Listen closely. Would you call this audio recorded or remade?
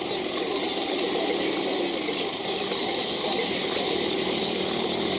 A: recorded